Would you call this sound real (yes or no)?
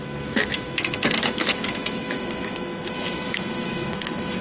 no